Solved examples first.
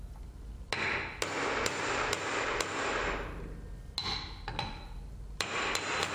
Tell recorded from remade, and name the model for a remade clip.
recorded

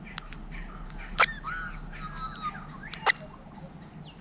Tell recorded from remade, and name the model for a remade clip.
recorded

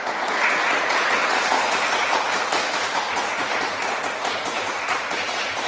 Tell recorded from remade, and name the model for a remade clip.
remade, vocoder, Vocos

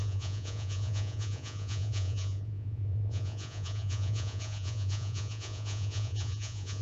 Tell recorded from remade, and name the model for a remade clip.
remade, vocoder, Vocos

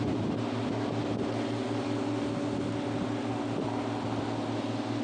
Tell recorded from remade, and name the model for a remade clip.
recorded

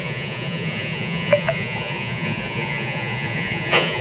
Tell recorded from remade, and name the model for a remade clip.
remade, vocoder, Vocos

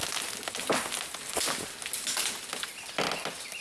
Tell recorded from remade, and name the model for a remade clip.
recorded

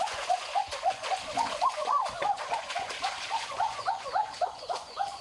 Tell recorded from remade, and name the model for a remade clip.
remade, vocoder, Vocos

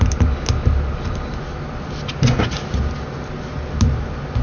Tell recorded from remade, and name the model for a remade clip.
recorded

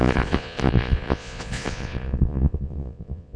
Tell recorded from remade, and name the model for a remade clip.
remade, vocoder, Vocos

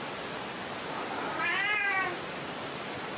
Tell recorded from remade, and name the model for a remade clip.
recorded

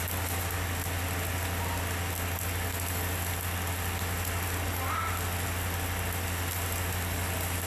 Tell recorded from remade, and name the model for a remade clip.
recorded